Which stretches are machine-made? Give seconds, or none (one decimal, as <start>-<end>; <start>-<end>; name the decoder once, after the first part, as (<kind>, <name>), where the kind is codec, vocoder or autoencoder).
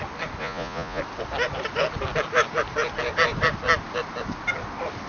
0.4-1.0 (vocoder, Vocos)